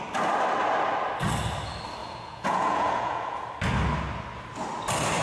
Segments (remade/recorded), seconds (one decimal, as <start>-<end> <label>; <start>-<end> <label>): 0.0-2.0 recorded; 2.0-3.5 remade; 3.5-5.2 recorded